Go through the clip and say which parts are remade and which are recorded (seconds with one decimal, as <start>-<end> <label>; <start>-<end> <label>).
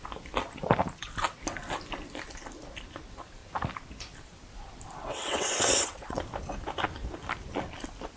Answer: 0.0-5.0 recorded; 5.0-6.2 remade; 6.2-8.2 recorded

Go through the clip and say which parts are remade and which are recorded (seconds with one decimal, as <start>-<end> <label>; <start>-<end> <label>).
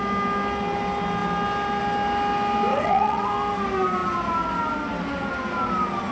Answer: 0.0-2.7 recorded; 2.7-3.3 remade; 3.3-6.1 recorded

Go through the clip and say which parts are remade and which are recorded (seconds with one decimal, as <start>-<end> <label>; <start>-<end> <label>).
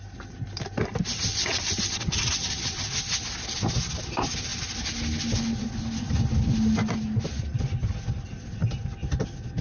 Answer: 0.0-1.3 recorded; 1.3-2.9 remade; 2.9-9.6 recorded